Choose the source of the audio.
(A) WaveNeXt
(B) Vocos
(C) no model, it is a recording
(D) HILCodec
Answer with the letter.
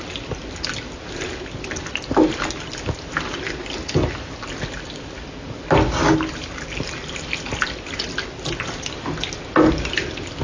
C